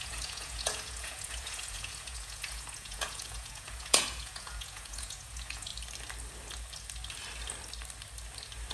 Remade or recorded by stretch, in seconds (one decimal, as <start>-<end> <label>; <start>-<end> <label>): 0.0-5.7 remade; 5.7-8.7 recorded